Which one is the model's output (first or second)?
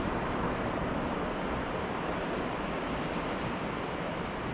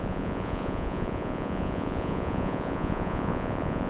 second